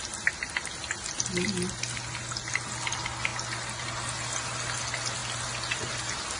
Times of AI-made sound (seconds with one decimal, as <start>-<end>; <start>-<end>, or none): none